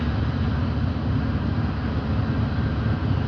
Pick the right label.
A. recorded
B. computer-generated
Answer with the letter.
A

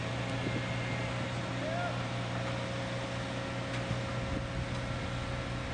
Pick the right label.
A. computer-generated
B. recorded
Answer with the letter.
B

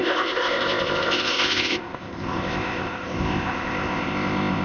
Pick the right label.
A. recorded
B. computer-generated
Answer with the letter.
B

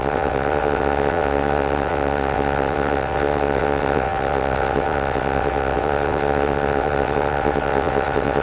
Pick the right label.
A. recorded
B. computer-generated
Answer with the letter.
B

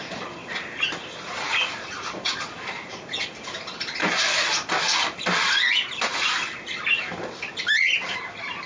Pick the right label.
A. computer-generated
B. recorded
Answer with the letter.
B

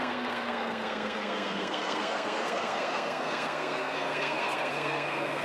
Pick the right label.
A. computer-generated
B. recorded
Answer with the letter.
A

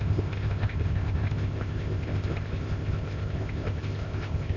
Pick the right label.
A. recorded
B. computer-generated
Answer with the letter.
B